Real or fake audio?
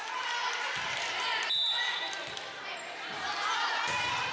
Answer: real